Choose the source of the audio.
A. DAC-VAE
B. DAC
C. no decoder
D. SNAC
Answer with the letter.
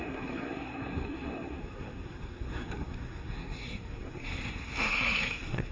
D